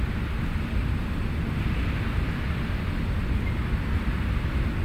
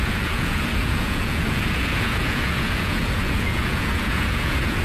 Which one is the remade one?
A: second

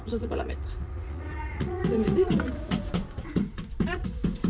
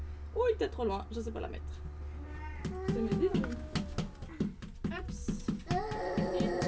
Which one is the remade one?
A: first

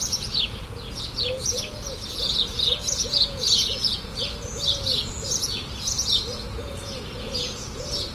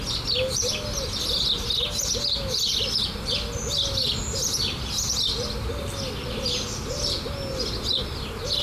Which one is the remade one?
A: first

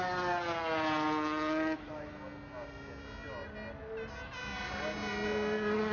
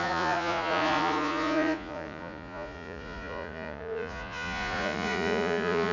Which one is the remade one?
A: second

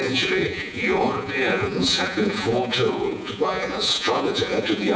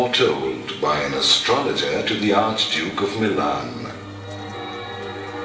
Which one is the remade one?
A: first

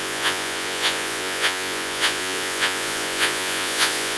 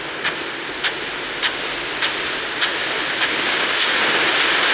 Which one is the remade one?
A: first